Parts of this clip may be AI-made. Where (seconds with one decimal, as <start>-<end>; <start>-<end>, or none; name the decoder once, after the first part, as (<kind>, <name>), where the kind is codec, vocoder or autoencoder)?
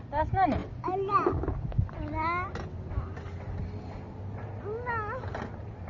none